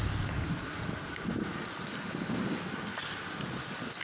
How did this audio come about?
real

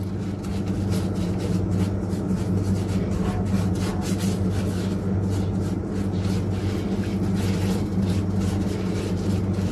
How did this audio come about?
real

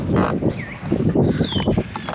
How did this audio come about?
real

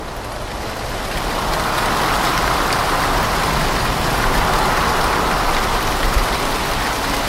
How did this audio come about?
real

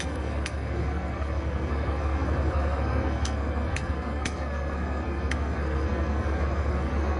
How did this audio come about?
fake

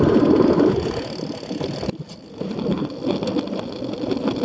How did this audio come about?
real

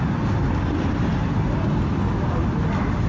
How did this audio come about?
real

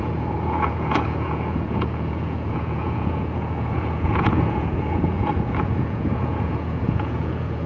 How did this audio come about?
fake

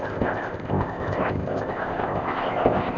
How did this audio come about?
fake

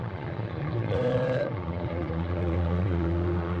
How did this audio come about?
fake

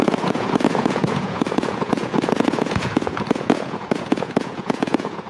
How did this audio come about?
fake